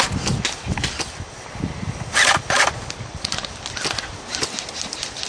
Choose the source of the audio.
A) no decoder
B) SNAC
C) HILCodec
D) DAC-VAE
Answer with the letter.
A